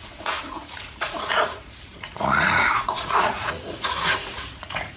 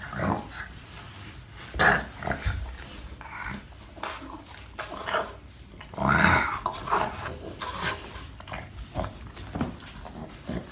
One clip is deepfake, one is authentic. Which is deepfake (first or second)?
first